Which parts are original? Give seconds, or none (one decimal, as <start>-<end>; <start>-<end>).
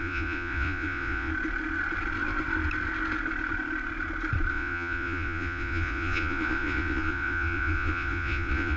1.3-4.5